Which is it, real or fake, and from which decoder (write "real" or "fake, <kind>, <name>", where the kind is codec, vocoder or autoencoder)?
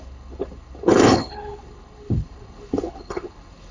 fake, codec, HILCodec